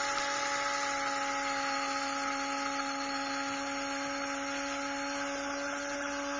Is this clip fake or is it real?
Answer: real